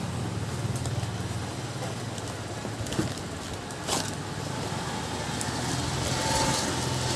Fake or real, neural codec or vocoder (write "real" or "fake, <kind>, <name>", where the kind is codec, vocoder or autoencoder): real